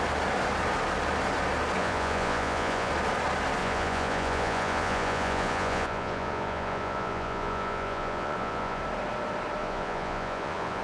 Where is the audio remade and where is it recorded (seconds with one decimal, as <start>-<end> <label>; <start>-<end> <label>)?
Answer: 0.0-1.8 recorded; 1.8-2.9 remade; 2.9-3.6 recorded; 3.6-8.8 remade; 8.8-9.6 recorded; 9.6-10.8 remade